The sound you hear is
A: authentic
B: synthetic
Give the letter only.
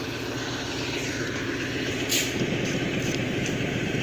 A